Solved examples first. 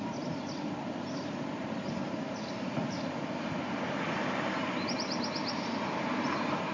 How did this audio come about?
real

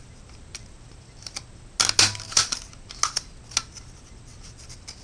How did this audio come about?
real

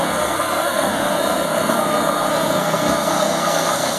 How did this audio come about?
fake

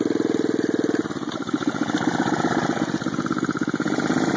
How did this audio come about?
real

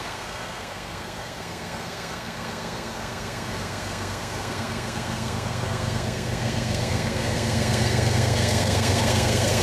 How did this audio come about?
fake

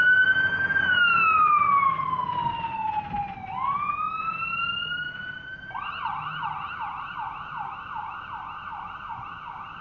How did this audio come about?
real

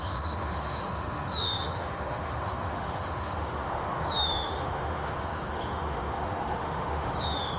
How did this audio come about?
fake